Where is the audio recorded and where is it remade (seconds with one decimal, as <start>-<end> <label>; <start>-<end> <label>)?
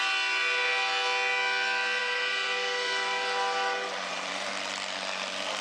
0.0-2.0 recorded; 2.0-4.5 remade; 4.5-5.6 recorded